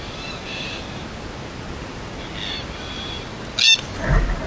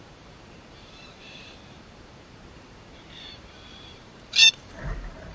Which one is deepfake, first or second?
second